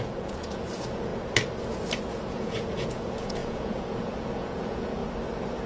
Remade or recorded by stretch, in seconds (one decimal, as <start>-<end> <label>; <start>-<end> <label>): 0.0-1.1 remade; 1.1-2.1 recorded; 2.1-5.0 remade; 5.0-5.7 recorded

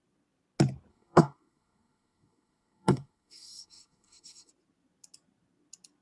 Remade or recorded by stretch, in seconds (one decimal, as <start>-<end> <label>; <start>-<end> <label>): 0.0-0.9 recorded; 0.9-4.5 remade; 4.5-6.0 recorded

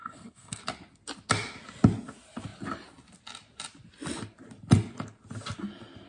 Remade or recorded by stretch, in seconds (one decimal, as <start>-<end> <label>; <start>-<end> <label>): 0.0-0.6 remade; 0.6-6.1 recorded

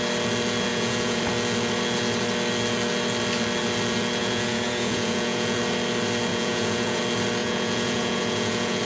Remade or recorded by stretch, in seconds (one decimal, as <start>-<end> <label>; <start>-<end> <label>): 0.0-0.7 recorded; 0.7-1.2 remade; 1.2-4.2 recorded; 4.2-5.6 remade; 5.6-6.3 recorded; 6.3-7.0 remade; 7.0-7.4 recorded; 7.4-8.8 remade

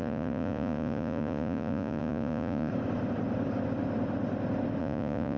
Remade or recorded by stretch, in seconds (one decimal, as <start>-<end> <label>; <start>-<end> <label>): 0.0-2.7 remade; 2.7-4.8 recorded; 4.8-5.4 remade